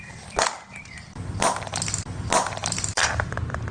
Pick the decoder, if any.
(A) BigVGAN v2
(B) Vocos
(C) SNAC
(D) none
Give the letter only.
A